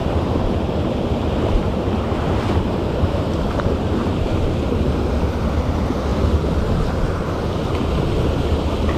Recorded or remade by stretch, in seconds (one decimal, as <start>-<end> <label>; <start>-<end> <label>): 0.0-4.8 remade; 4.8-9.0 recorded